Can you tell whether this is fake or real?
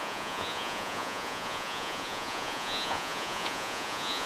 fake